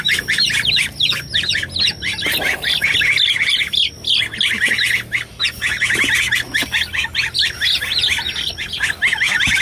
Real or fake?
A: real